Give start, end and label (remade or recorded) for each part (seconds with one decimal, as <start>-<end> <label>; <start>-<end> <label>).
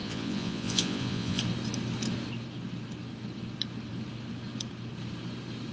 0.0-1.4 remade; 1.4-5.7 recorded